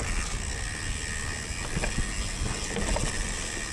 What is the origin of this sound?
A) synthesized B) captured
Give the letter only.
B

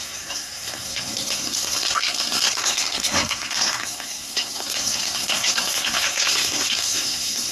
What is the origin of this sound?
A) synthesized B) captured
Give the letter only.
A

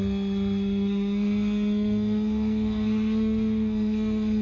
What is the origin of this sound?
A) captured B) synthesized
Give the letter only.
B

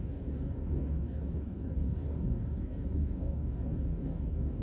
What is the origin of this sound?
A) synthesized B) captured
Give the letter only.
A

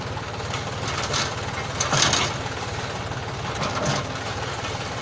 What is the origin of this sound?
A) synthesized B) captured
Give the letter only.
B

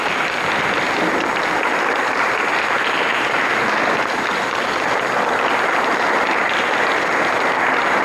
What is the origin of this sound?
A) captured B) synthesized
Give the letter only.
A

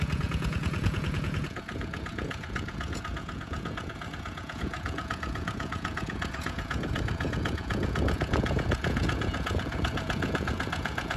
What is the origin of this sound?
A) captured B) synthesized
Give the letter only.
B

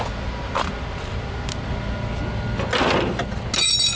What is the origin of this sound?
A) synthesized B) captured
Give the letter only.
B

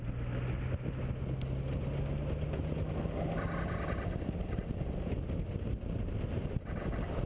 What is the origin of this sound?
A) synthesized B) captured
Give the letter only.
B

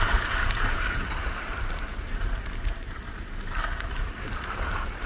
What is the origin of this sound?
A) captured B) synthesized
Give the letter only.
B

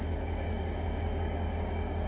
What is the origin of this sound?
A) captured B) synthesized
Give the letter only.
B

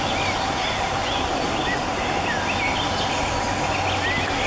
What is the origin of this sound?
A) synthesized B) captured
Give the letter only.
B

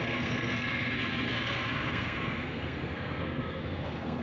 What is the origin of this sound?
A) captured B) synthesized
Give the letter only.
B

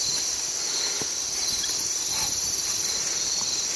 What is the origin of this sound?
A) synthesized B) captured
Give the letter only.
B